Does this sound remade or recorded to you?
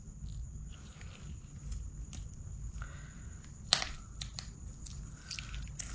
recorded